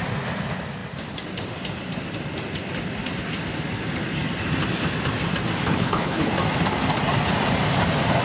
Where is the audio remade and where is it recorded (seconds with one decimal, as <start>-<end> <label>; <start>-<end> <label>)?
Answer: 0.0-5.7 recorded; 5.7-6.3 remade; 6.3-8.2 recorded